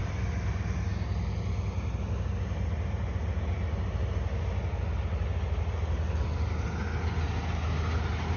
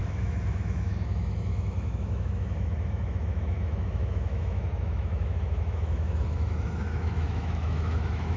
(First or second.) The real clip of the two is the first